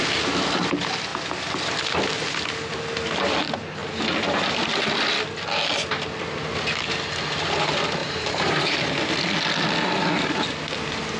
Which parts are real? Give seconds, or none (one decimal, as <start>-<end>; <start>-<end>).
0.0-8.0; 8.9-11.2